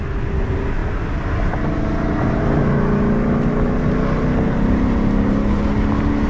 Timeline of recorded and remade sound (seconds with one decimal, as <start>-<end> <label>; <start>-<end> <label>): 0.0-6.3 recorded